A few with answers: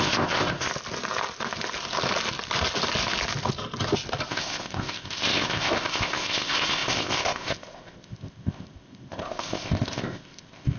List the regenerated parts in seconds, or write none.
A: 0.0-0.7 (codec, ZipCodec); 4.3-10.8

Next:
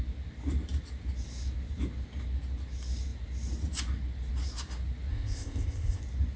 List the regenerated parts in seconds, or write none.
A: 5.1-6.0 (codec, ZipCodec)

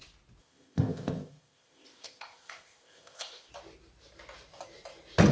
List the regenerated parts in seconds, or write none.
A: 0.4-3.5 (codec, ZipCodec)

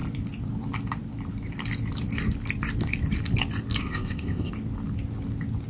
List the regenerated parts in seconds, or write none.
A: 3.8-4.5 (codec, ZipCodec)

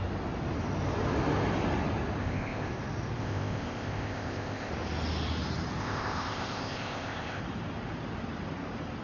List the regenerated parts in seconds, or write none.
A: 2.2-2.7 (codec, ZipCodec); 3.2-4.7; 5.8-7.4

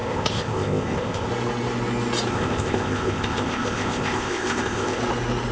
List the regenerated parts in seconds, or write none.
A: 0.0-1.3 (codec, ZipCodec); 2.3-5.0

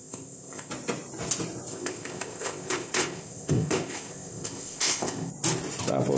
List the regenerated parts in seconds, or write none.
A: 0.0-0.7 (codec, ZipCodec); 1.7-5.3